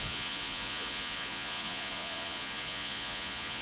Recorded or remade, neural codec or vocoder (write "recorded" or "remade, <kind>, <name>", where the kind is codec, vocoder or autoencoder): remade, vocoder, Vocos